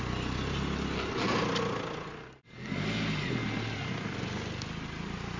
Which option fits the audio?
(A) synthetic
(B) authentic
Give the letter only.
B